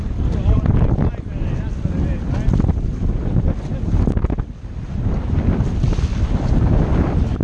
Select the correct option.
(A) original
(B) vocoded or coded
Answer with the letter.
A